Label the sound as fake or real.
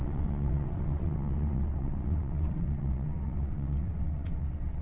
fake